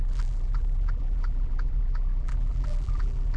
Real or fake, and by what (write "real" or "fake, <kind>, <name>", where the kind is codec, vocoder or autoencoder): fake, vocoder, BigVGAN v2